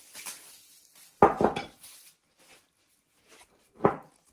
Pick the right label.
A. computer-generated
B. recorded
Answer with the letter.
B